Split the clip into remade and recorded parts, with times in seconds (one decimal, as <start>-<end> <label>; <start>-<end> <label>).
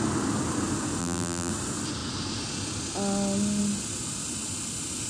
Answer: 0.0-1.0 recorded; 1.0-1.5 remade; 1.5-5.1 recorded